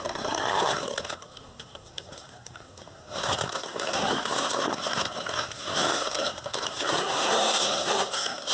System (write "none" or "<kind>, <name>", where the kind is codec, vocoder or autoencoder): codec, SNAC